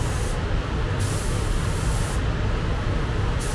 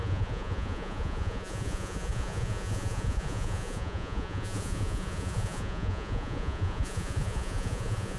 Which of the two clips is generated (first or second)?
second